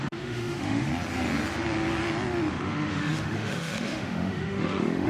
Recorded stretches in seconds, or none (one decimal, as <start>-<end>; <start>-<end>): 0.9-2.5